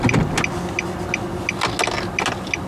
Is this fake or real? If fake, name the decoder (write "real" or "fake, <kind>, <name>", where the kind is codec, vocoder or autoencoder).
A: real